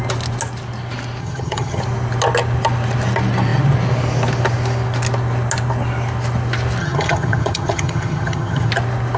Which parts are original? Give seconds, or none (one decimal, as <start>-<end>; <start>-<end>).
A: 0.0-1.2; 1.8-6.8; 8.7-9.2